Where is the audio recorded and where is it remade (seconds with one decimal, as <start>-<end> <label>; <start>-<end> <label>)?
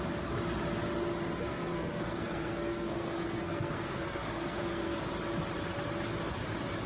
0.0-1.4 recorded; 1.4-5.0 remade; 5.0-6.9 recorded